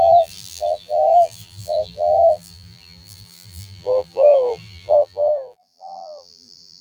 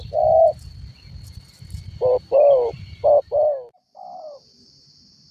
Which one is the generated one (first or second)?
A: first